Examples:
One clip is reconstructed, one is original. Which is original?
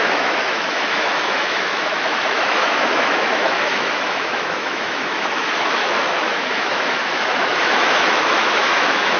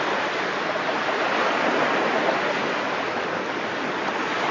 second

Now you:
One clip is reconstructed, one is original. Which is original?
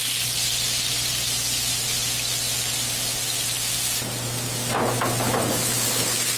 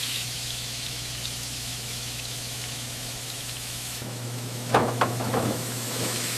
first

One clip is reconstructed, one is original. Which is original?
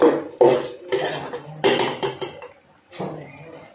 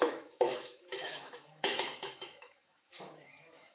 first